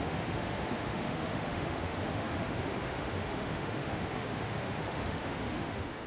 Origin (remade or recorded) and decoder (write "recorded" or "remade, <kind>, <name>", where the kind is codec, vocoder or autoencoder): remade, autoencoder, DAC-VAE